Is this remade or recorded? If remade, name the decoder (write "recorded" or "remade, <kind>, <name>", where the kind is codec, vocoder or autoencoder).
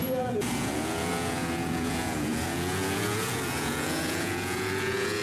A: remade, vocoder, Vocos